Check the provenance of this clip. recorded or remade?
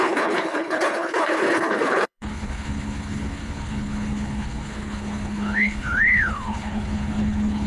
remade